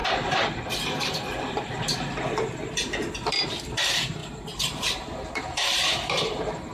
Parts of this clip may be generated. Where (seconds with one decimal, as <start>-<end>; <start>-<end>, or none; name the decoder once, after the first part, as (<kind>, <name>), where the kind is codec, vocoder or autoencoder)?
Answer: 3.3-6.7 (vocoder, BigVGAN v2)